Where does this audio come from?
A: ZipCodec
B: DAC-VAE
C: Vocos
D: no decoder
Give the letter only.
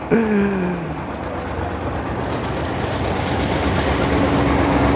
D